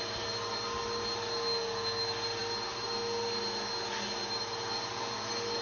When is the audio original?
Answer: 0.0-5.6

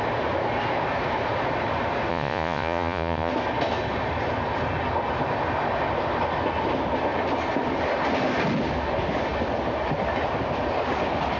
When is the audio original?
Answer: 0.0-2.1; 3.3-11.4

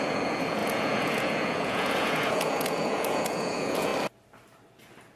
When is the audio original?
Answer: 3.9-5.2